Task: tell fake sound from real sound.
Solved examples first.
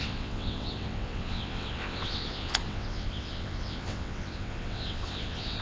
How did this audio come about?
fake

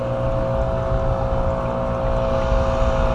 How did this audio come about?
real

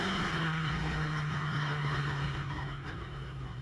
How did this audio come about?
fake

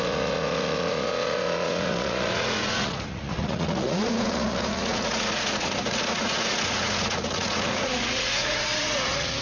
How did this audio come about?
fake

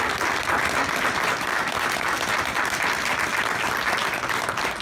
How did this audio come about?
real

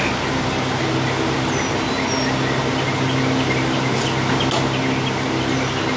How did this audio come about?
real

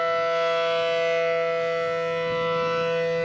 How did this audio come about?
real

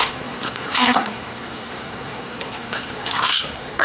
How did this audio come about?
fake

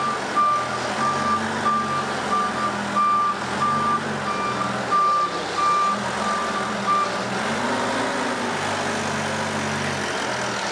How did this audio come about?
real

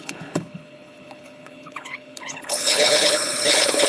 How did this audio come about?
fake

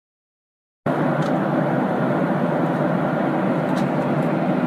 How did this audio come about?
real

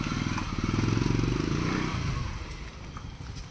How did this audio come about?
real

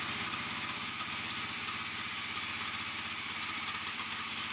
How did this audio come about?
real